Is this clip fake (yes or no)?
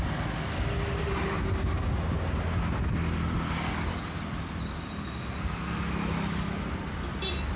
no